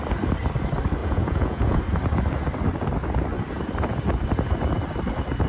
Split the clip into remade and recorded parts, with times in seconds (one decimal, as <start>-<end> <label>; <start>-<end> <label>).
0.0-1.0 recorded; 1.0-1.8 remade; 1.8-5.5 recorded